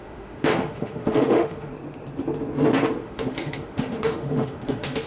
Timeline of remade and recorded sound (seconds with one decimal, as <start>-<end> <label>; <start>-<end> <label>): 0.0-1.7 remade; 1.7-2.9 recorded; 2.9-5.1 remade